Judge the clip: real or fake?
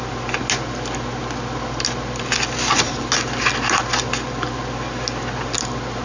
real